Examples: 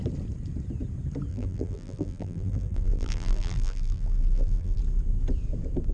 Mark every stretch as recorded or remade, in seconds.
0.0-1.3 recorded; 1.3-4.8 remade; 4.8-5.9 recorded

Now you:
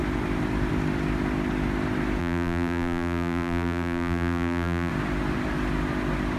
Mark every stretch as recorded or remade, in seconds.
0.0-2.2 recorded; 2.2-4.9 remade; 4.9-6.4 recorded